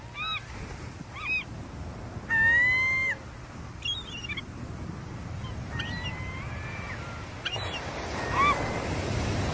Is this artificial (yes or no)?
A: no